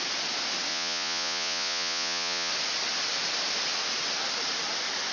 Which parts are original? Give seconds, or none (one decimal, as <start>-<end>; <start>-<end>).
0.0-0.7; 2.5-5.1